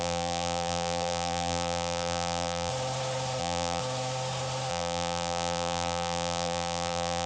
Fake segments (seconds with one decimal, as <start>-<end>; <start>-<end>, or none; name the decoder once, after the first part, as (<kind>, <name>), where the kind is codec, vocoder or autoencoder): 0.0-2.7 (vocoder, BigVGAN v2); 3.4-3.8; 4.7-7.3